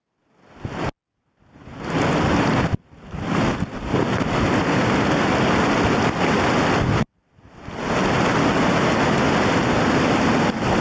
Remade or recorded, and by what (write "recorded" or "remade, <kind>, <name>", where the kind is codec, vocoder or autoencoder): recorded